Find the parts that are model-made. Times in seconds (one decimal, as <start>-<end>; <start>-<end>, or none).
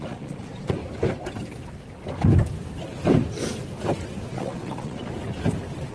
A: 0.0-0.8; 4.3-5.1